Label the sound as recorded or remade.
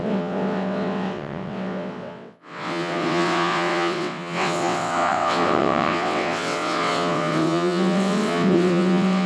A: remade